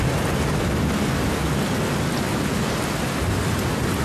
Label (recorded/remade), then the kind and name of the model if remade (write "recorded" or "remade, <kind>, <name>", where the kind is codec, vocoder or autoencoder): recorded